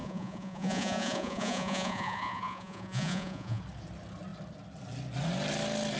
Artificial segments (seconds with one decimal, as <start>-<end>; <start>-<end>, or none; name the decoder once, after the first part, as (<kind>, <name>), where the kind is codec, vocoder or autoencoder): 0.0-3.6 (vocoder, Vocos)